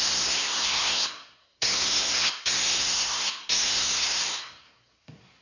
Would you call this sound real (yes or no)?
no